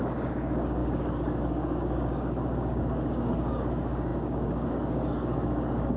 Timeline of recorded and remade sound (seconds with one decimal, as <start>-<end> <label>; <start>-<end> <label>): 0.0-6.0 remade